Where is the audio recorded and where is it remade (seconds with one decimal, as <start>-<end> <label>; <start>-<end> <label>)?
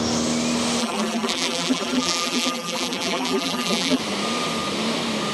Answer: 0.0-0.8 recorded; 0.8-4.0 remade; 4.0-5.3 recorded